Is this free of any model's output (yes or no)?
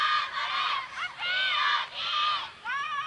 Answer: yes